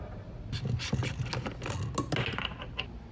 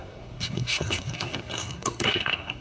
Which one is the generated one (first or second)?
second